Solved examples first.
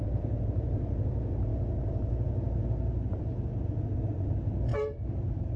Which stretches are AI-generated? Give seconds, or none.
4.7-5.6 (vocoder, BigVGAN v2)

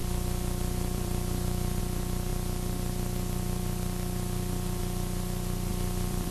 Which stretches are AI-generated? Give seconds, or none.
0.0-1.8 (vocoder, BigVGAN v2); 5.7-6.3